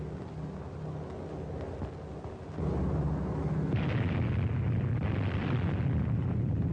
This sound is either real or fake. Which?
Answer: real